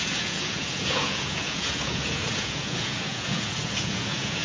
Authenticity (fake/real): fake